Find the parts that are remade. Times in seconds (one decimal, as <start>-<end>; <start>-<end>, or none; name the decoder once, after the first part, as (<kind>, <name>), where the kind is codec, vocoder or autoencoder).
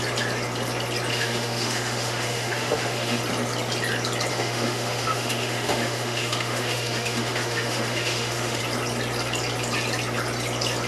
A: 1.1-3.2 (autoencoder, DAC-VAE); 4.3-8.6